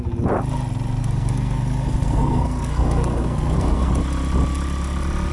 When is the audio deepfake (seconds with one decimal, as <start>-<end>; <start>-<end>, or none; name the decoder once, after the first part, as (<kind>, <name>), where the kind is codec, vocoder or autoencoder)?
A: 1.0-3.9 (codec, SNAC)